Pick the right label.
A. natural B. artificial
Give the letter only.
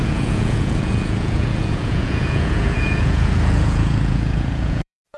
B